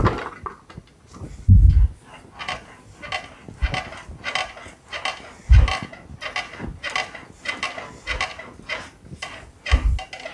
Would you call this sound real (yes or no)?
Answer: yes